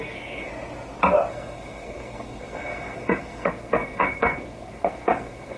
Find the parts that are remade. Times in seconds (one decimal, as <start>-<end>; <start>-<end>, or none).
0.0-0.5; 1.3-5.6